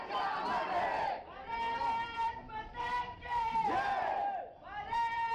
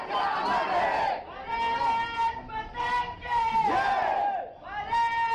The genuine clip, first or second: second